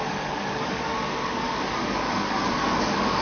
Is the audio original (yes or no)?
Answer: no